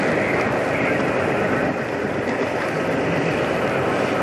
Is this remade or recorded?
recorded